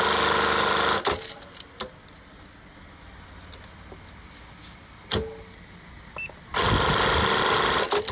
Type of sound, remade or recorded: recorded